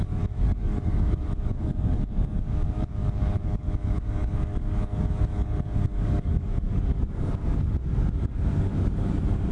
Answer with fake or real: fake